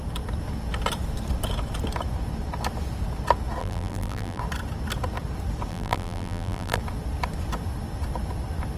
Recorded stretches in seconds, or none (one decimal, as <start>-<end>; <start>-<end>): 0.0-3.6; 4.4-5.7; 6.8-8.8